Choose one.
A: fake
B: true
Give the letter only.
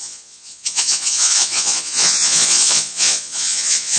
A